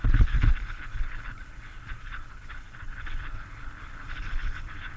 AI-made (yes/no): yes